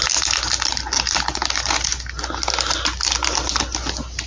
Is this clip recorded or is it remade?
recorded